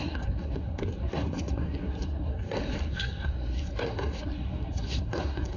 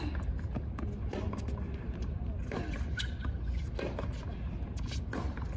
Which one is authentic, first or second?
second